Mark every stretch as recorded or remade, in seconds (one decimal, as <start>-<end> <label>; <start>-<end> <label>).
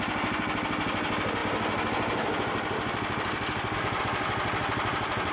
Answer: 0.0-5.3 recorded